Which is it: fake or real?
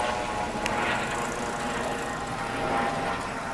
real